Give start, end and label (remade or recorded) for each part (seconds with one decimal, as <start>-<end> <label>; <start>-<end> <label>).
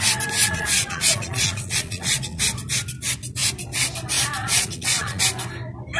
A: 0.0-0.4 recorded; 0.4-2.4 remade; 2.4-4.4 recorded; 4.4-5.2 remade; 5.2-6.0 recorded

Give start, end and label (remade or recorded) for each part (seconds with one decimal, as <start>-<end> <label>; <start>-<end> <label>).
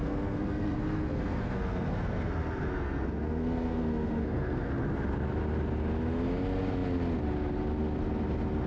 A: 0.0-4.7 remade; 4.7-8.7 recorded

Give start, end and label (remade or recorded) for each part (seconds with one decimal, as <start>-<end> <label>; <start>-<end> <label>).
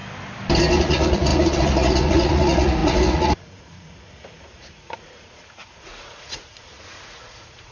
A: 0.0-0.8 recorded; 0.8-7.7 remade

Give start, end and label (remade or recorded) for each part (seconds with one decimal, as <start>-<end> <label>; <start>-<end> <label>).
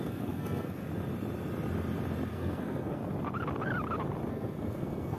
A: 0.0-0.8 remade; 0.8-2.3 recorded; 2.3-3.0 remade; 3.0-4.3 recorded; 4.3-5.2 remade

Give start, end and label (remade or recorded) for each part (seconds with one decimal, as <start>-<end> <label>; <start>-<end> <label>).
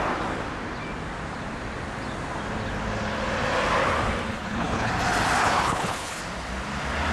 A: 0.0-4.3 recorded; 4.3-4.9 remade; 4.9-5.4 recorded; 5.4-6.2 remade; 6.2-7.1 recorded